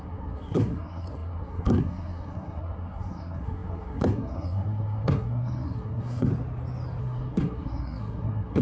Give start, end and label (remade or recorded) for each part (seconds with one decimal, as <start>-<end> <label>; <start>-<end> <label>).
0.0-6.3 remade; 6.3-7.0 recorded; 7.0-8.6 remade